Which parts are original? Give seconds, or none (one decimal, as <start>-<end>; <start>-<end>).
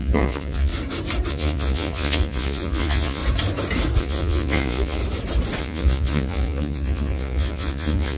0.7-1.3; 3.2-4.0; 5.0-5.6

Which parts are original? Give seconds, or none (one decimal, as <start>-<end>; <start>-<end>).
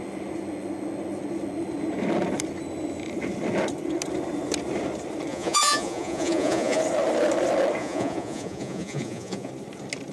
0.0-5.3; 6.8-7.8; 9.5-10.1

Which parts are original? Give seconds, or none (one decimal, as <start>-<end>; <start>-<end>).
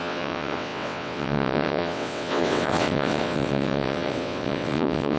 none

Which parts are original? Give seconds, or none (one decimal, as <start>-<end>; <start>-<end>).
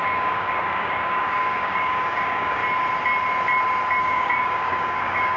2.6-4.0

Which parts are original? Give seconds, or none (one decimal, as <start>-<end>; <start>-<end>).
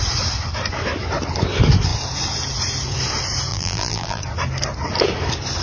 0.0-3.5; 4.2-5.6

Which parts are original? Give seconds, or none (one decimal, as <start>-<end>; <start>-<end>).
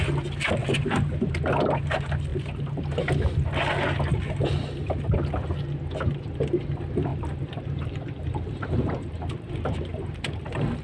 0.0-0.6; 1.3-7.1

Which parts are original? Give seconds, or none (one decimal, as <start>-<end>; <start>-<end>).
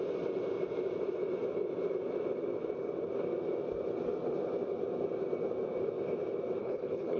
0.0-6.6